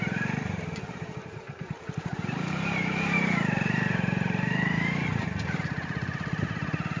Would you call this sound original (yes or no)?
no